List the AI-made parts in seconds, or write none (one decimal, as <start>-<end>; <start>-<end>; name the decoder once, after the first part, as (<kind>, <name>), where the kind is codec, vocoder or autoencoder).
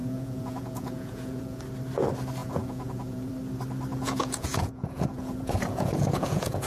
0.0-1.6 (vocoder, Vocos); 2.4-3.3; 3.9-6.7